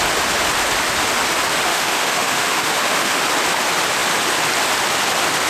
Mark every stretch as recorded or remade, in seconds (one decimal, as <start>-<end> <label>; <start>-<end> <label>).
0.0-1.7 recorded; 1.7-3.2 remade; 3.2-5.5 recorded